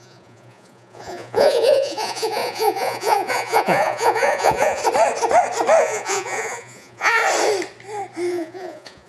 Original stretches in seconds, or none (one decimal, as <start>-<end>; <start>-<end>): 4.8-5.8; 7.2-8.3